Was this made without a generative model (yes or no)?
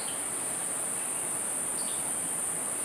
yes